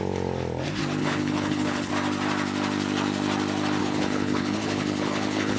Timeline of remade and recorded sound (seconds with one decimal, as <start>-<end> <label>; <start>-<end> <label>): 0.0-1.0 recorded; 1.0-1.9 remade; 1.9-3.8 recorded; 3.8-5.6 remade